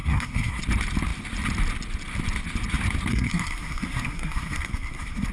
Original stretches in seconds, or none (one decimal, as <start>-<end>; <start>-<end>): 0.6-3.1